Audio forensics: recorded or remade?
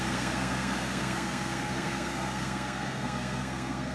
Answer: remade